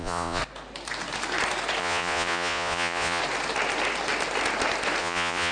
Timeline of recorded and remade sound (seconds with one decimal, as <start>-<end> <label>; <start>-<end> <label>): 0.0-0.4 remade; 0.4-1.8 recorded; 1.8-3.2 remade; 3.2-5.0 recorded; 5.0-5.5 remade

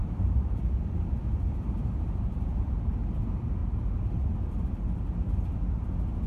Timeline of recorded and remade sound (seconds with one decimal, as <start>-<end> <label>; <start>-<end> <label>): 0.0-0.5 remade; 0.5-6.3 recorded

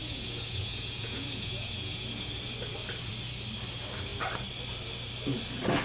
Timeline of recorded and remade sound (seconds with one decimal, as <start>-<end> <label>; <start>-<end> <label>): 0.0-2.3 remade; 2.3-5.8 recorded